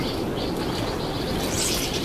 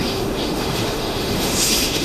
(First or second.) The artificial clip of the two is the second